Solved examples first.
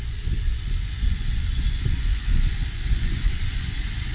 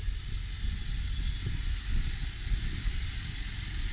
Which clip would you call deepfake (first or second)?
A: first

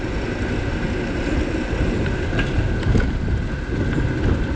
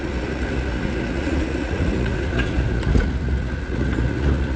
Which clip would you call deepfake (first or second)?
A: second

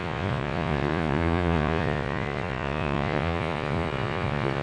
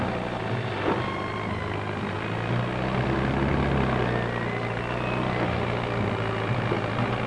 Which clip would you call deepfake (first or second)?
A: first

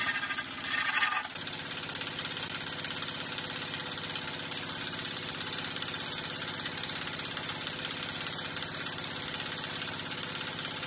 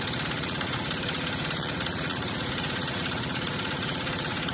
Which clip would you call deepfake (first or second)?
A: second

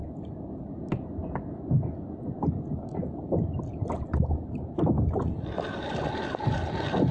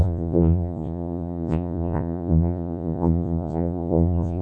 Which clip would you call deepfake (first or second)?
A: second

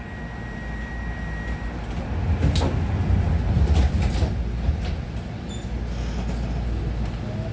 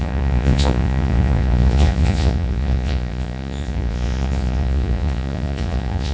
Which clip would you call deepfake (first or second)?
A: second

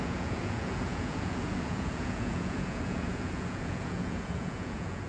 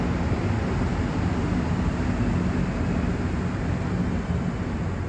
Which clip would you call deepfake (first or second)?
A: first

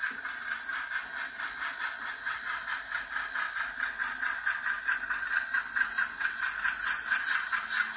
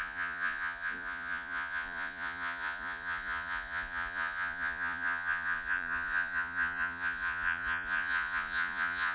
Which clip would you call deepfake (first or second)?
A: second